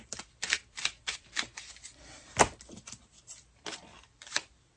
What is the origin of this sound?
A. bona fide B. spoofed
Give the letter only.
B